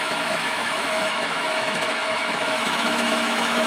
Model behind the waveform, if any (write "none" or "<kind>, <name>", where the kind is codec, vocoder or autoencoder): autoencoder, DAC-VAE